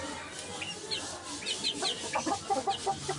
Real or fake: real